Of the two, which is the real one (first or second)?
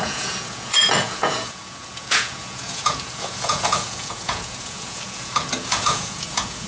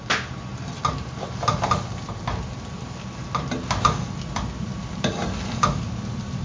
second